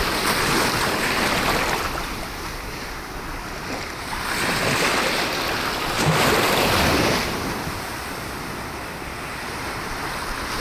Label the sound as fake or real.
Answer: real